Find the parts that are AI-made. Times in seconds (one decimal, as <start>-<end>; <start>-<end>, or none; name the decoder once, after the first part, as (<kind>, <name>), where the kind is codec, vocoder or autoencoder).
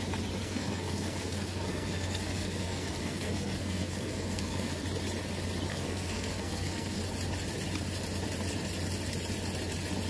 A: 0.4-4.8 (codec, SNAC); 5.7-7.0